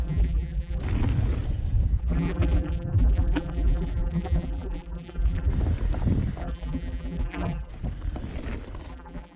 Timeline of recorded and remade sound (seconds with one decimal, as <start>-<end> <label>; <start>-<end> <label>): 0.0-0.8 remade; 0.8-2.0 recorded; 2.0-5.5 remade; 5.5-6.4 recorded; 6.4-7.7 remade; 7.7-8.9 recorded; 8.9-9.4 remade